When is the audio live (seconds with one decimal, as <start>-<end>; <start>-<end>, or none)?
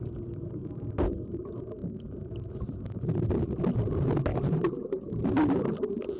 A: 0.0-0.6; 1.4-1.8; 3.4-4.3; 5.6-6.2